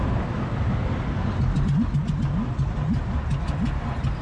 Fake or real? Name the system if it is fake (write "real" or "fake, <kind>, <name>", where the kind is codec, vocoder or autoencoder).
real